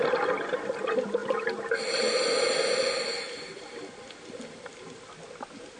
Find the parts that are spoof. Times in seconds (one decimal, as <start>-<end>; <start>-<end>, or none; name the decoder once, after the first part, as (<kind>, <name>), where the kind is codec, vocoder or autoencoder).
none